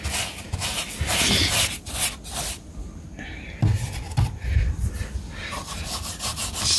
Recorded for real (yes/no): yes